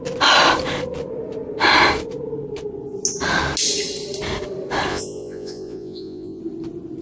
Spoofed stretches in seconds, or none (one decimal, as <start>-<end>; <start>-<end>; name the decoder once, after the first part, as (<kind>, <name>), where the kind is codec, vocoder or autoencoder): 4.9-6.4 (vocoder, Vocos)